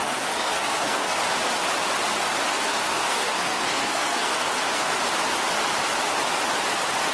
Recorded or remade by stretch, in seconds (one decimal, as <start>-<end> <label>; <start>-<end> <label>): 0.0-1.2 remade; 1.2-2.5 recorded; 2.5-4.9 remade; 4.9-7.1 recorded